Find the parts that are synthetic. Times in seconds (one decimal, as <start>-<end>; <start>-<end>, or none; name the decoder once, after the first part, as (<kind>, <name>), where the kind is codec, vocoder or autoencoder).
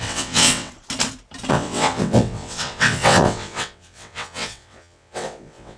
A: 0.0-0.7 (vocoder, WaveNeXt); 1.5-5.8